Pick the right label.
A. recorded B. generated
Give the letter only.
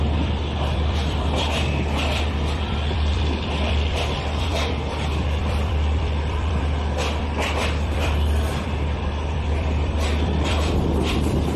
B